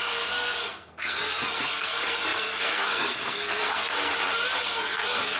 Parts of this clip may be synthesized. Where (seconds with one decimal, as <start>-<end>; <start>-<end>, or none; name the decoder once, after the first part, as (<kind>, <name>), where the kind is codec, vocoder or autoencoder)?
0.0-4.1 (codec, SNAC); 4.6-5.4